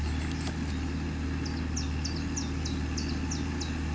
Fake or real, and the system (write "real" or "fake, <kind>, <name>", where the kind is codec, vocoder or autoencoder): real